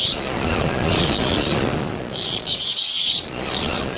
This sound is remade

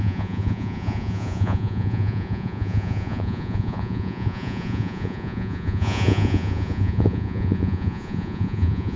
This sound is remade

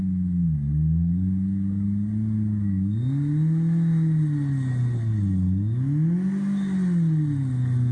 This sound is recorded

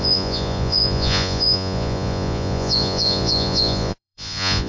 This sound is remade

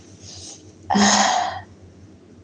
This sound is recorded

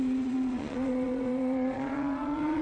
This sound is remade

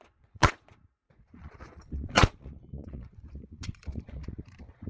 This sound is remade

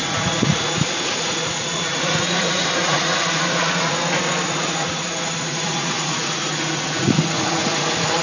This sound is remade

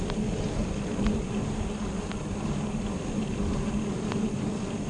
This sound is recorded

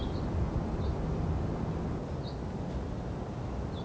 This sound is recorded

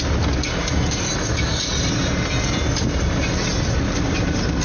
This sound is recorded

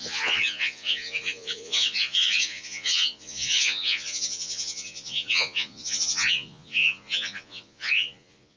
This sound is remade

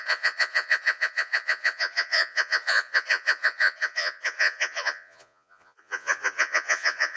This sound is remade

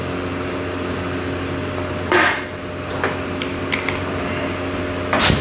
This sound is recorded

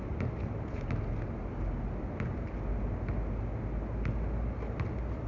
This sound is recorded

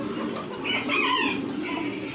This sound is recorded